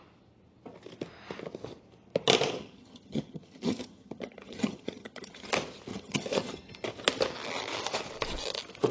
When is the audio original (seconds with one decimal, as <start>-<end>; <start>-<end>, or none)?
0.0-2.6; 5.5-5.9; 6.7-8.9